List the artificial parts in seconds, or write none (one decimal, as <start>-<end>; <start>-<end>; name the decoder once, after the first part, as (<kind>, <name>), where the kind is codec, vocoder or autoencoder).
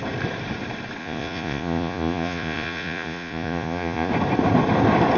1.0-4.1 (vocoder, Vocos)